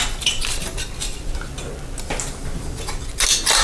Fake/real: real